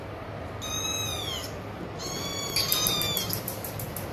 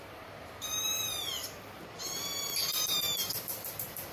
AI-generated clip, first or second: second